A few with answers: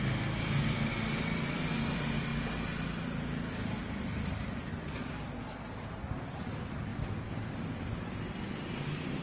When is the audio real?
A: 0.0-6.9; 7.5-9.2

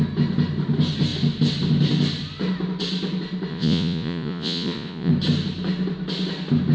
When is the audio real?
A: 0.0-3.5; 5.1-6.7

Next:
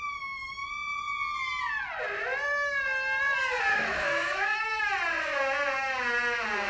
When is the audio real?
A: 0.0-3.7; 4.8-6.7

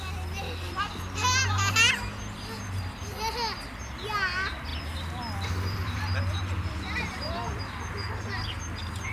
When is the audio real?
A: 0.0-4.7; 7.6-9.1